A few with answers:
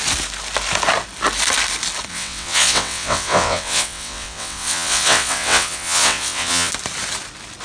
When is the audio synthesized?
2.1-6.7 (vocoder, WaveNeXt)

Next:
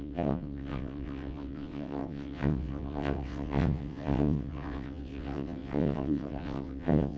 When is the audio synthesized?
0.0-7.2 (vocoder, WaveNeXt)

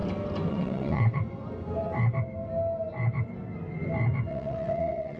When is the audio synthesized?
0.5-1.2 (vocoder, WaveNeXt); 4.3-5.2

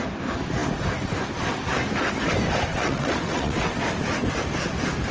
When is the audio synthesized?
2.7-3.8 (vocoder, WaveNeXt)